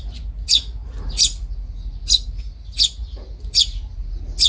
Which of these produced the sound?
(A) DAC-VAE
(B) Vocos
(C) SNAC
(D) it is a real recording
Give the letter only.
D